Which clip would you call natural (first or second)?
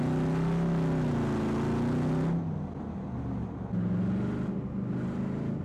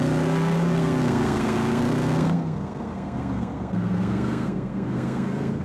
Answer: first